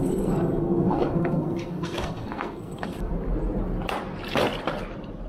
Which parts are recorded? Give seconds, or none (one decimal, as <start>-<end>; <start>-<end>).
3.1-5.3